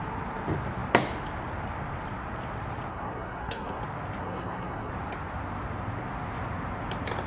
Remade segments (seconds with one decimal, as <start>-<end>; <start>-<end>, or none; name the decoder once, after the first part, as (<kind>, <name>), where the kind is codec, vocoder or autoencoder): 2.9-3.8 (codec, SNAC); 4.2-4.9